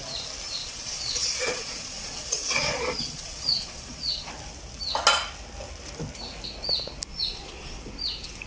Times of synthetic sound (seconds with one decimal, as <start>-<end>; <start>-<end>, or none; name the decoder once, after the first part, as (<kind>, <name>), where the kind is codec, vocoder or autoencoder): 0.6-4.3 (vocoder, Vocos); 7.1-7.9